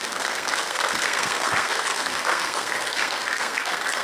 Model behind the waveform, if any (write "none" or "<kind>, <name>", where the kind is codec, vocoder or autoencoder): codec, SNAC